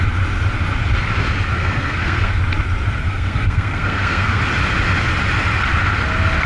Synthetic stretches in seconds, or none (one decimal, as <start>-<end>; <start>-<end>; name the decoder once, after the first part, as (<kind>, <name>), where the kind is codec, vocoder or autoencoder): 1.6-2.4 (codec, SNAC); 3.0-4.4